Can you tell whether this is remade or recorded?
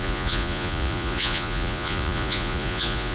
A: remade